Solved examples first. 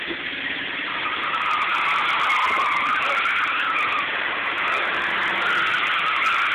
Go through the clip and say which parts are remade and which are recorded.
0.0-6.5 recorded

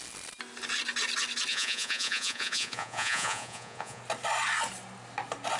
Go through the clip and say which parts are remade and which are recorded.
0.0-1.5 recorded; 1.5-4.0 remade; 4.0-5.6 recorded